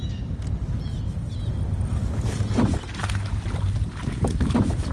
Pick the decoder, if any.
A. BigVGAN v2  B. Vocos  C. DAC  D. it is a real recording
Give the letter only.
D